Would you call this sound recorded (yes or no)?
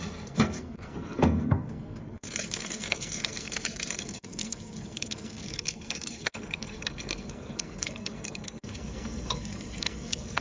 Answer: no